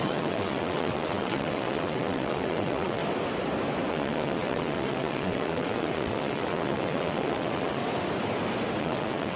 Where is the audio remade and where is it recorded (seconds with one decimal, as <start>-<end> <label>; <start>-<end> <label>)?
0.0-3.0 remade; 3.0-3.9 recorded; 3.9-7.8 remade; 7.8-8.8 recorded; 8.8-9.4 remade